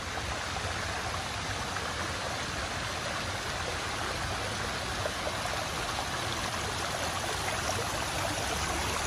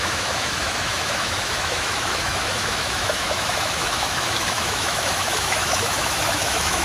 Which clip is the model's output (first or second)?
second